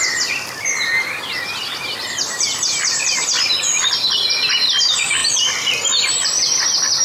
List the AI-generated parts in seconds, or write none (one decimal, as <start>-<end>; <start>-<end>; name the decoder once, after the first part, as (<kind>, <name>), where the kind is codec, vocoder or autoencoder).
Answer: none